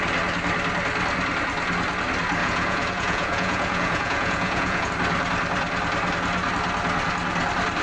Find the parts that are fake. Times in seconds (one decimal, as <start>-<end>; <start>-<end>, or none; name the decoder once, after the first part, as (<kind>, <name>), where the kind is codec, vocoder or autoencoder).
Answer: 2.4-4.9 (vocoder, Vocos)